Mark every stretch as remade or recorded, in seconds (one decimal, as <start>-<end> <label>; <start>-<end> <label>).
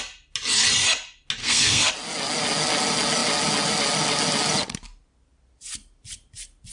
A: 0.0-1.4 recorded; 1.4-1.9 remade; 1.9-6.7 recorded